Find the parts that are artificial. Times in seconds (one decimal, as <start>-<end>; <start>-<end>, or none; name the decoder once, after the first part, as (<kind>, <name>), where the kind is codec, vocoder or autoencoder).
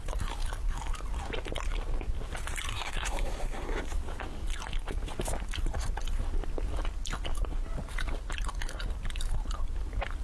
2.7-3.8 (codec, SNAC)